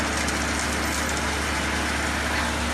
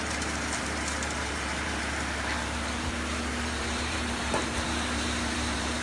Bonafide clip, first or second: first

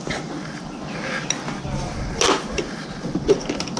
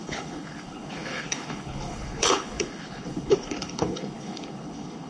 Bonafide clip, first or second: first